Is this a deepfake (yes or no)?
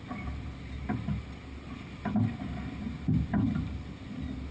no